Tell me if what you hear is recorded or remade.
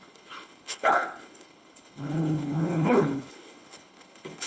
remade